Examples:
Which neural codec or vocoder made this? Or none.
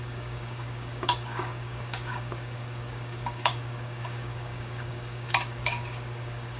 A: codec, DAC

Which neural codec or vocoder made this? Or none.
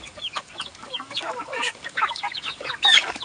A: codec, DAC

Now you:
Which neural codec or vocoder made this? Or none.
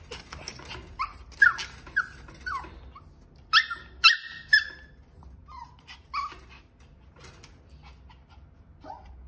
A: none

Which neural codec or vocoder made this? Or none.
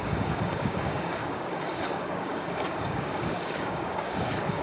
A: codec, DAC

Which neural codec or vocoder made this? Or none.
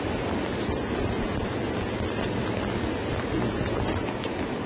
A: none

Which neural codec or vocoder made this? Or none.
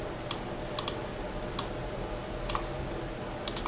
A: none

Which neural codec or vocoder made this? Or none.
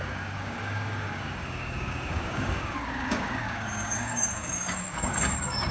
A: codec, DAC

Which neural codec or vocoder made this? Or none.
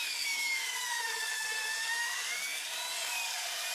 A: codec, DAC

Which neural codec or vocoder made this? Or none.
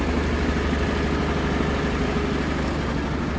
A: none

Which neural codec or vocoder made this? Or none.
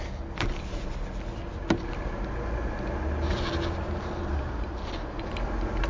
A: none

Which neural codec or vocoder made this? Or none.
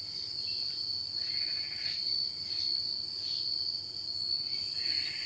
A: none